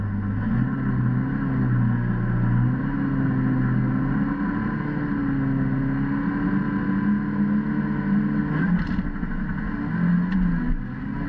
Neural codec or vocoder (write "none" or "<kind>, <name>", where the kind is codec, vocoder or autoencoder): none